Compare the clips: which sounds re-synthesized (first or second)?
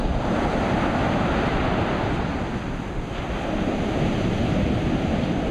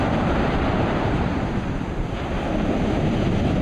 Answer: second